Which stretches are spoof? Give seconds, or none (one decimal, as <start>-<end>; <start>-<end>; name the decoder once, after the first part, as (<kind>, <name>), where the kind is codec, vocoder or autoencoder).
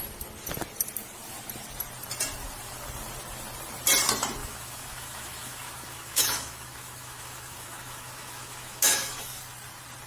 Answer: 4.4-9.4 (autoencoder, DAC-VAE)